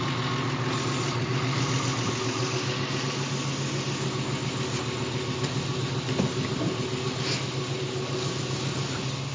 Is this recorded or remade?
recorded